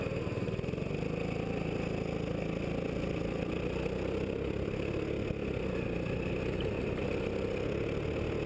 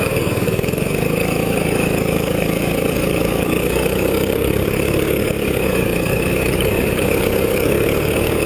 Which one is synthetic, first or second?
second